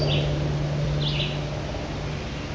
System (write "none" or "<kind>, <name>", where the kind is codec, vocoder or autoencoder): none